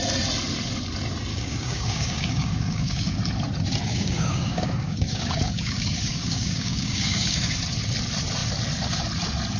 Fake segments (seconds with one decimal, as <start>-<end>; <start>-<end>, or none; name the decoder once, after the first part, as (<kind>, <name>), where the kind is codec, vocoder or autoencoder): 1.3-3.2 (codec, DAC); 3.9-7.5